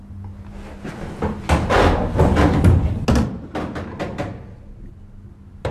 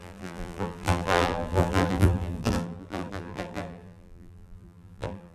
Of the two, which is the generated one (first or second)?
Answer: second